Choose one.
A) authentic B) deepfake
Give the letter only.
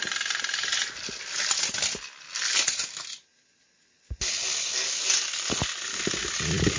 A